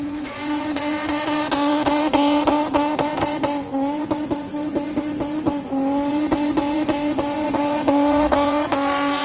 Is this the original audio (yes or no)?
no